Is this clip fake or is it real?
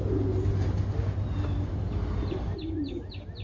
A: real